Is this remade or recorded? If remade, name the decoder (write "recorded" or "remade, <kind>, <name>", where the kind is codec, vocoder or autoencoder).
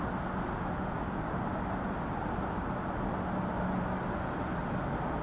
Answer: recorded